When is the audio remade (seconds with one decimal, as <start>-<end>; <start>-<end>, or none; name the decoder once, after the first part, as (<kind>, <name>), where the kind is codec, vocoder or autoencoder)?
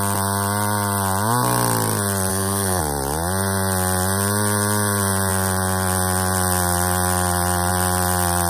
2.3-2.8 (codec, SNAC)